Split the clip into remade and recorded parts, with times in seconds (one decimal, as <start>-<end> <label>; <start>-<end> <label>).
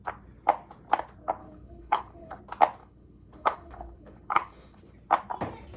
0.0-1.4 recorded; 1.4-2.4 remade; 2.4-2.8 recorded; 2.8-4.8 remade; 4.8-5.8 recorded